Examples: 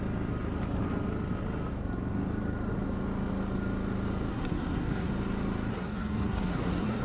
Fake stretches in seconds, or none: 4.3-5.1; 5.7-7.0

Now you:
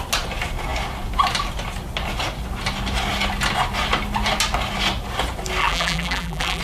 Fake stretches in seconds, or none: 5.6-6.6

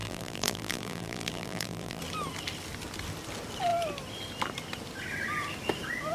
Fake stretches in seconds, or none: 0.0-2.0

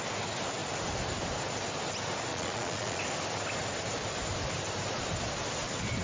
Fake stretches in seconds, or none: 2.3-3.0

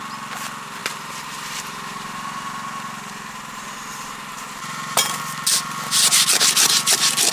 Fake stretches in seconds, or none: 0.8-5.2

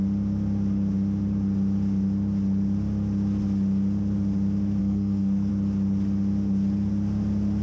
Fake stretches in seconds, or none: 4.8-5.5